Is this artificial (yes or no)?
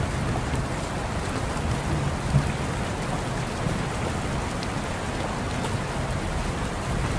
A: no